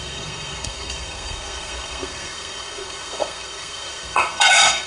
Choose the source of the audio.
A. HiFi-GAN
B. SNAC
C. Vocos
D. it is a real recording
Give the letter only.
B